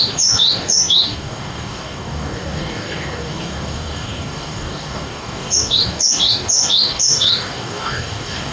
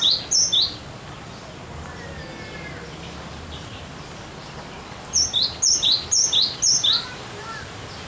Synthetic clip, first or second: first